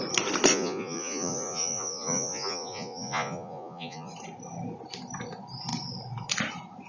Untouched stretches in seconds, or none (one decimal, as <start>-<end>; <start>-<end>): 0.0-0.5; 4.1-6.9